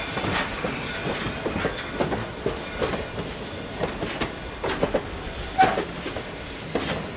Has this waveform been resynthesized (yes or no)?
no